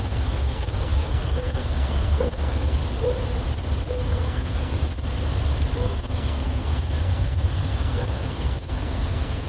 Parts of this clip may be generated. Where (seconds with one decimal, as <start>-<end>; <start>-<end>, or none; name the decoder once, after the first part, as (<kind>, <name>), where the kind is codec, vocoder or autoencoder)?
0.0-2.8 (codec, SNAC); 3.9-4.8; 5.8-9.5